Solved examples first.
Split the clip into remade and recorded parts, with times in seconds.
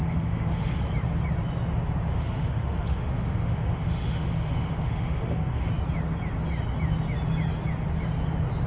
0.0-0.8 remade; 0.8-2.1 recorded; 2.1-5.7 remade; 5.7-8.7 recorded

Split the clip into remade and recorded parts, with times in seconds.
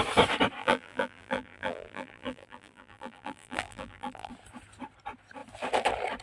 0.0-0.6 recorded; 0.6-4.3 remade; 4.3-6.2 recorded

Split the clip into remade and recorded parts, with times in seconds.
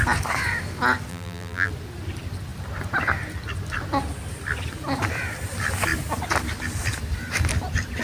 0.0-1.1 recorded; 1.1-1.7 remade; 1.7-8.0 recorded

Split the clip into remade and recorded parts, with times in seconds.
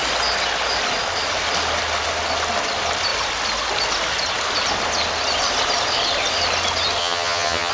0.0-7.0 recorded; 7.0-7.7 remade